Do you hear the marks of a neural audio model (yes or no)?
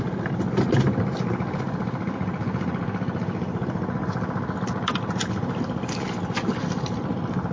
no